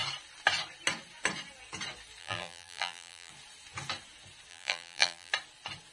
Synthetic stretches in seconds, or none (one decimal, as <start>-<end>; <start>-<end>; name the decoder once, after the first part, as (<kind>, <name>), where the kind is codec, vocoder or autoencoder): 2.2-3.3 (vocoder, BigVGAN v2); 4.5-5.3